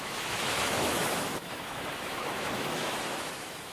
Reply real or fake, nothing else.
fake